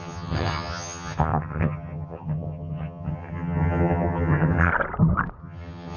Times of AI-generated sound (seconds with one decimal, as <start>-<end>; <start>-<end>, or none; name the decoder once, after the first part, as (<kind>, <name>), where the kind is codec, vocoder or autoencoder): 0.0-4.7 (vocoder, HiFi-GAN); 5.4-6.0